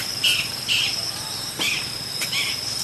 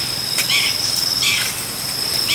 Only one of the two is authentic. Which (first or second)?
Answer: second